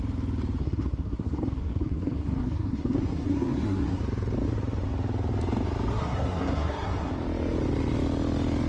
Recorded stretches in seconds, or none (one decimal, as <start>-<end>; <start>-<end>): 0.0-0.6; 4.0-5.9; 7.1-8.7